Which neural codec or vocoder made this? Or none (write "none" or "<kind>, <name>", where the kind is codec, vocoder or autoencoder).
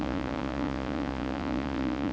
vocoder, Vocos